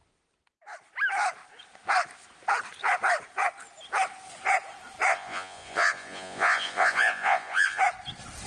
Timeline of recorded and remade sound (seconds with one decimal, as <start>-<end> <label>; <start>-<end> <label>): 0.0-5.1 recorded; 5.1-7.8 remade; 7.8-8.5 recorded